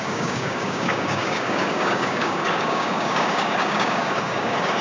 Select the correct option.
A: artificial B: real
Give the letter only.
A